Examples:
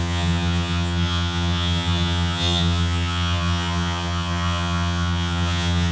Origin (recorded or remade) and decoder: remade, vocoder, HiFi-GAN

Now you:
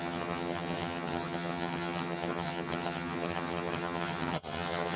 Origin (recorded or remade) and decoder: remade, vocoder, HiFi-GAN